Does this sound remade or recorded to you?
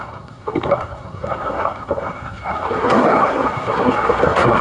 remade